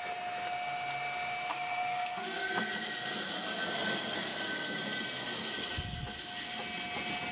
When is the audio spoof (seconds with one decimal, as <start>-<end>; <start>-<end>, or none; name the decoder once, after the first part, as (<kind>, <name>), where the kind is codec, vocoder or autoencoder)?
1.5-2.5 (codec, SNAC)